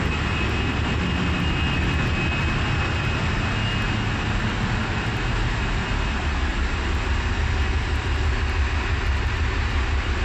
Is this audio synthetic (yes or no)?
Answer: no